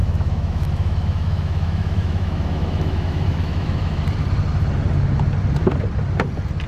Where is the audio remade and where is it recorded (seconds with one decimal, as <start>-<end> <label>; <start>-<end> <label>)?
0.0-4.0 remade; 4.0-6.7 recorded